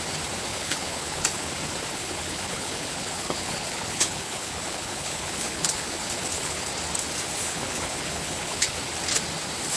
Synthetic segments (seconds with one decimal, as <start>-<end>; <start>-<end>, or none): 0.5-1.5; 1.9-6.7; 7.4-8.7